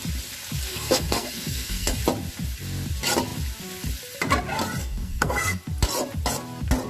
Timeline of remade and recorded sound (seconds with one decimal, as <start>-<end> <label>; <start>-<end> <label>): 0.0-0.7 recorded; 0.7-2.0 remade; 2.0-4.8 recorded; 4.8-5.6 remade; 5.6-6.9 recorded